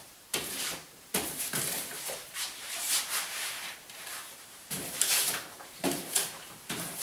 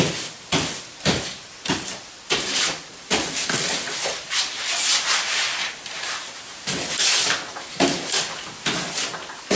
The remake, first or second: first